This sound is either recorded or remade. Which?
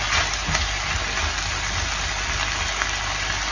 recorded